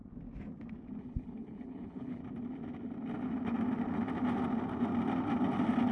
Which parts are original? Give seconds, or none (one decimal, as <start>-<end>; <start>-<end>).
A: 0.0-1.0; 2.2-5.9